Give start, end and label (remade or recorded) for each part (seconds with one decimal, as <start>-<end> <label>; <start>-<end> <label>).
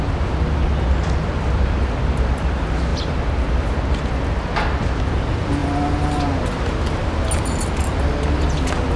0.0-9.0 recorded